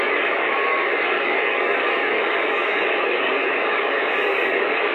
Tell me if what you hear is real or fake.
fake